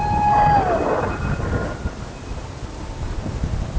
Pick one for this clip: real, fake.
real